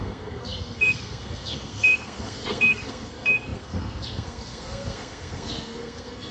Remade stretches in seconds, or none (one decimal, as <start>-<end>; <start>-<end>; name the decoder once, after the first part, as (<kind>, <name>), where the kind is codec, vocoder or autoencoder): 0.0-6.3 (codec, SNAC)